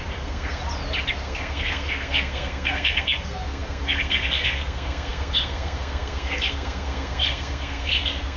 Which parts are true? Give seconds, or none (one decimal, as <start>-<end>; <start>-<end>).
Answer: 0.6-1.1